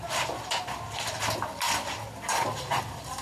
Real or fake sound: fake